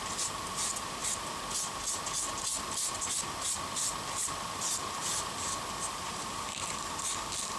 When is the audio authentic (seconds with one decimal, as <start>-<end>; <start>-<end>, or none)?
0.0-7.6

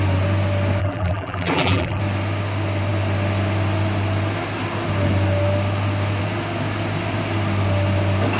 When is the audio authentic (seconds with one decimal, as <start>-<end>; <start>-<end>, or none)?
0.0-0.8; 2.0-8.4